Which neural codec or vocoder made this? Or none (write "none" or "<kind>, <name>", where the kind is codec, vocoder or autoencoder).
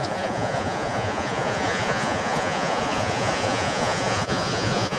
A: vocoder, Vocos